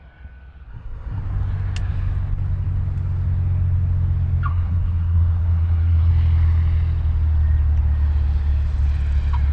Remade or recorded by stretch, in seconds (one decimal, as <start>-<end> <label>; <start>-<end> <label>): 0.0-0.7 recorded; 0.7-1.2 remade; 1.2-4.5 recorded; 4.5-6.1 remade; 6.1-9.5 recorded